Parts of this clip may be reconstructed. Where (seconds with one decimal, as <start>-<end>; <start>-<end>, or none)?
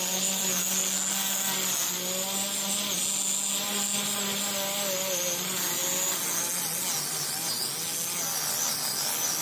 none